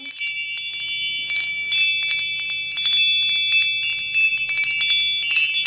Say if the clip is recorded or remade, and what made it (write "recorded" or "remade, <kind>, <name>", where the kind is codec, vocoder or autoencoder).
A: recorded